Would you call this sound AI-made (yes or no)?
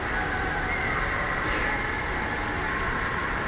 no